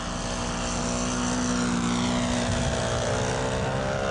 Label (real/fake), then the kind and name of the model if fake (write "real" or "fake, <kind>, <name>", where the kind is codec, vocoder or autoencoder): real